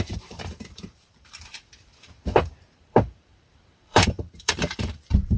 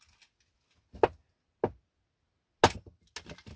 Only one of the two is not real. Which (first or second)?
first